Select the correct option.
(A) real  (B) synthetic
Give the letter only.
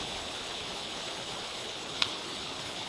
B